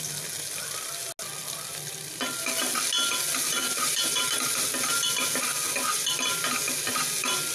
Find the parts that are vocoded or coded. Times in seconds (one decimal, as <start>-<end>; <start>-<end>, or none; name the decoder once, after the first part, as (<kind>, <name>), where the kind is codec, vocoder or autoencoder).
none